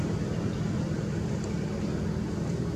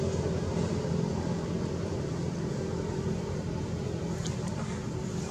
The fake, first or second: second